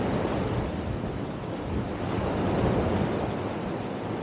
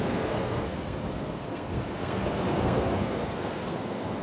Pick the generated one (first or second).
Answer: second